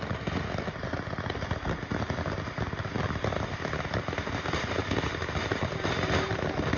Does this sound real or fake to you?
real